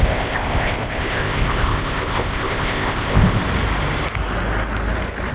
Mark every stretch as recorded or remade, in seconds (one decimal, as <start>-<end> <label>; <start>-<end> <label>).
0.0-3.4 remade; 3.4-5.3 recorded